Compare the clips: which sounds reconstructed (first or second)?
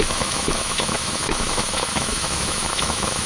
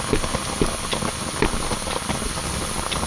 first